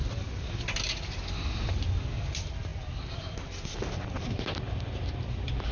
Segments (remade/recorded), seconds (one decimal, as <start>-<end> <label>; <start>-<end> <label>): 0.0-5.7 recorded